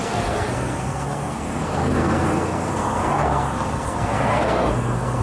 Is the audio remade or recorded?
remade